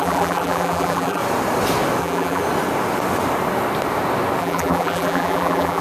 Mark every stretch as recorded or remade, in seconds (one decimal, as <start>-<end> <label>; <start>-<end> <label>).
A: 0.0-1.2 remade; 1.2-2.0 recorded; 2.0-2.4 remade; 2.4-4.4 recorded; 4.4-5.8 remade